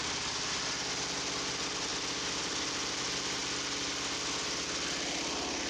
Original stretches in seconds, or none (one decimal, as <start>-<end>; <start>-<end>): none